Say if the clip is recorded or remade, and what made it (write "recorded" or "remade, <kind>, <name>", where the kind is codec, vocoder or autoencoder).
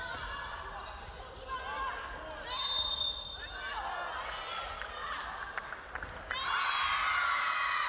recorded